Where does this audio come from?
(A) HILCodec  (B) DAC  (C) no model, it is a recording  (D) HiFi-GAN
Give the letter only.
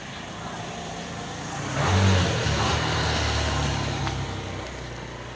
C